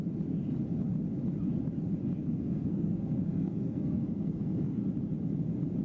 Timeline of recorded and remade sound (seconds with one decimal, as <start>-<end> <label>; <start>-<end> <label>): 0.0-2.2 recorded; 2.2-4.8 remade; 4.8-5.8 recorded

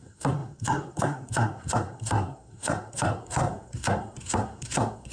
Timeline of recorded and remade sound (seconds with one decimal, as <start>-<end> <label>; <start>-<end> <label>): 0.0-5.1 remade

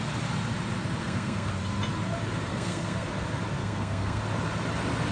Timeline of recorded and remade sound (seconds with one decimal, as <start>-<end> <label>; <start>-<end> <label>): 0.0-1.0 recorded; 1.0-1.5 remade; 1.5-2.5 recorded; 2.5-3.1 remade; 3.1-3.6 recorded; 3.6-4.2 remade; 4.2-5.1 recorded

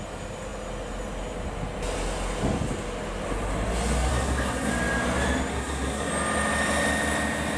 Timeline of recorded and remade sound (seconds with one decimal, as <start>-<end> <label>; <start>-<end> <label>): 0.0-4.1 recorded; 4.1-4.7 remade; 4.7-5.5 recorded; 5.5-6.1 remade; 6.1-7.6 recorded